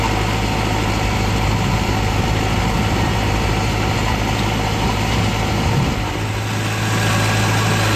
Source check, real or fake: real